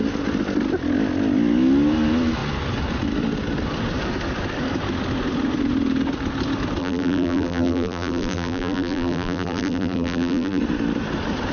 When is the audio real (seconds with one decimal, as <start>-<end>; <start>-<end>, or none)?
0.0-6.8; 10.6-11.5